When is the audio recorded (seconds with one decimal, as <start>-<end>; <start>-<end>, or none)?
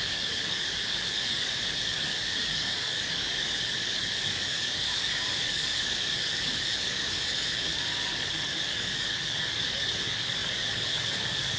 none